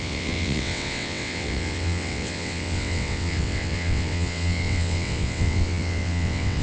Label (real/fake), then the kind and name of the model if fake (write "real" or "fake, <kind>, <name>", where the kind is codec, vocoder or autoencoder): fake, vocoder, WaveNeXt